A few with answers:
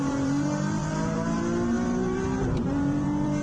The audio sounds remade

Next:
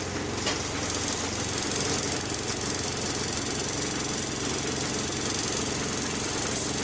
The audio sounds recorded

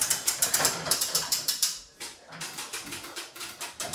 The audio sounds remade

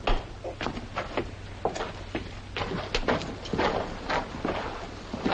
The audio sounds recorded